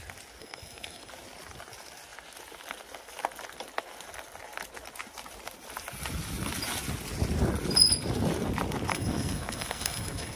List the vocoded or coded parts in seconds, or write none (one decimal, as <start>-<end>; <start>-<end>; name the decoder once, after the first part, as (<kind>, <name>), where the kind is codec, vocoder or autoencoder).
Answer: 0.4-1.1 (codec, SNAC); 8.9-10.4